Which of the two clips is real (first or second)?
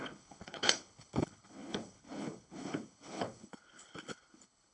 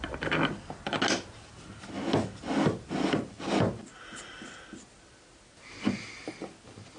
second